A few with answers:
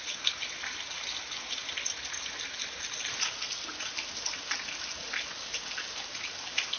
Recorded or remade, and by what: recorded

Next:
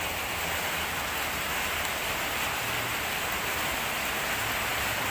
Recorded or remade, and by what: recorded